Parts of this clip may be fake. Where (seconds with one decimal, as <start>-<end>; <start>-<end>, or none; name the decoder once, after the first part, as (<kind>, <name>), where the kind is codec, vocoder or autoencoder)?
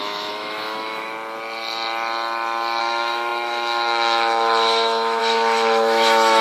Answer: 0.0-1.1 (autoencoder, DAC-VAE); 2.8-6.4